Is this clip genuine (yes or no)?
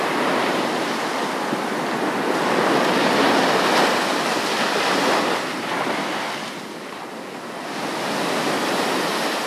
yes